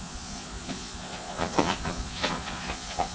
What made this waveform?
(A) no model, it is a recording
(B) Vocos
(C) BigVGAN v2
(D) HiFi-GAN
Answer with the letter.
B